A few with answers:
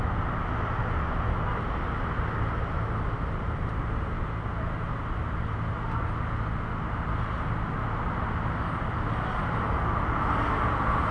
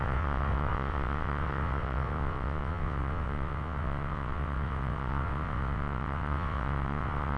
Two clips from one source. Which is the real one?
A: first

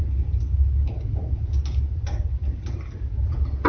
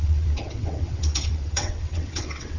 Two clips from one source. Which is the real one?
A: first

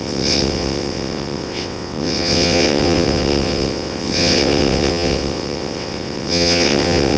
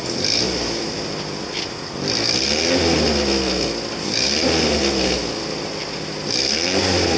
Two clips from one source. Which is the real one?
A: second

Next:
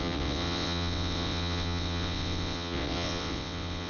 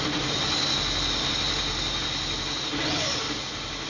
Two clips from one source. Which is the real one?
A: second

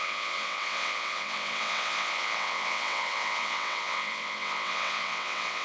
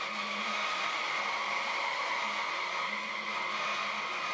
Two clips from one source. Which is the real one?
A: second